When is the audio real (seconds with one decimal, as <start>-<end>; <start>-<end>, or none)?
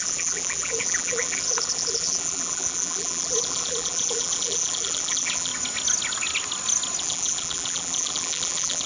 5.5-7.0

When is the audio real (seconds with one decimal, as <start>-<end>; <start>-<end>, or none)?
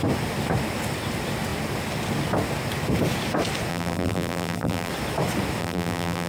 0.0-3.7; 4.9-5.6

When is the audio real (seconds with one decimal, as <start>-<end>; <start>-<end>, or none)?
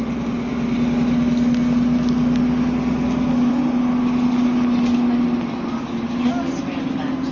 0.0-7.3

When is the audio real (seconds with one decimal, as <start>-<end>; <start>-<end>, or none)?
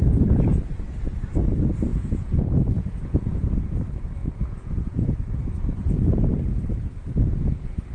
0.0-1.9; 3.5-4.2; 5.7-7.9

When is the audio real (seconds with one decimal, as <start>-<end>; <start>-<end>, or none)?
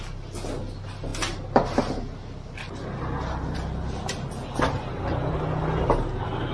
0.0-6.5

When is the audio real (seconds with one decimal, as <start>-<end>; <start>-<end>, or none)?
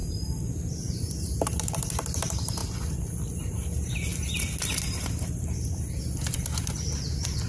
0.0-0.9; 2.6-3.4; 4.1-4.7